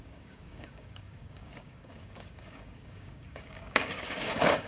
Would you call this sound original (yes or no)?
no